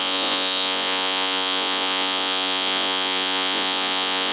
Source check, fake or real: fake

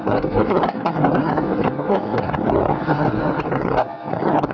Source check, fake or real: fake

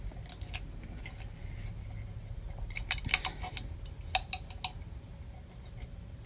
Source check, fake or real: real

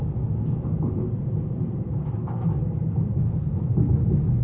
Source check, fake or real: real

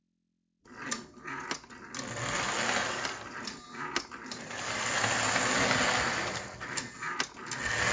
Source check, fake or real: real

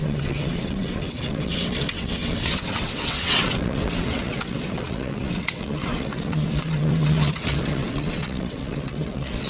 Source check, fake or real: fake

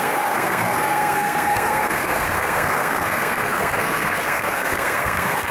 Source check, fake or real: fake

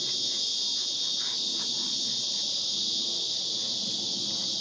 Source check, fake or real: real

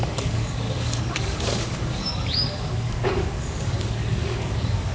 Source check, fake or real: fake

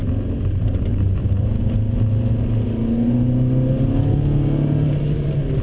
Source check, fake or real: real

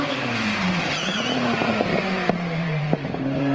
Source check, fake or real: fake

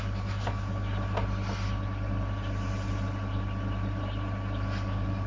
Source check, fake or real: real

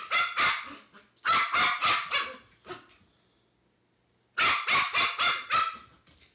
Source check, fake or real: real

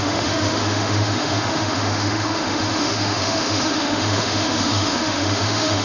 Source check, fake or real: fake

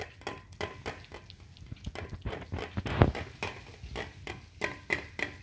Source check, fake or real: real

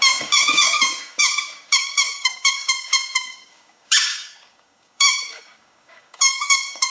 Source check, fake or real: fake